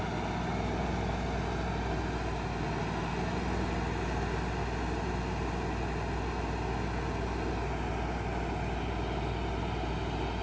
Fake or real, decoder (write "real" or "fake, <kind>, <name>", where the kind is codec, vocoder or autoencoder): real